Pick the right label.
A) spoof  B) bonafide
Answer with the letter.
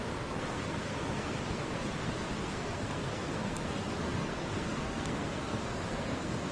A